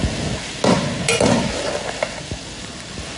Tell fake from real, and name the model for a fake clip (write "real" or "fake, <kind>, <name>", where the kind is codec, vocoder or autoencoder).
real